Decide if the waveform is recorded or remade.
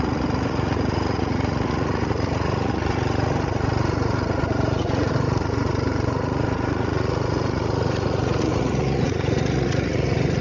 remade